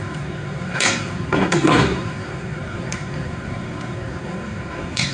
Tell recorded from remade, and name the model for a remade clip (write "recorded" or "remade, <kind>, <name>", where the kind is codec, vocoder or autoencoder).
remade, codec, SNAC